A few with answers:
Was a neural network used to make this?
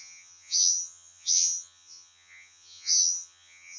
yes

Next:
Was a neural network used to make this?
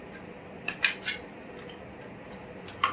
no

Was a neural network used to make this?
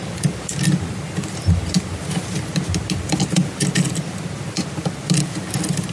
no